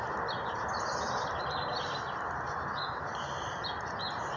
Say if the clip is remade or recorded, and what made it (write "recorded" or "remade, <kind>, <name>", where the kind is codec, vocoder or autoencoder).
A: recorded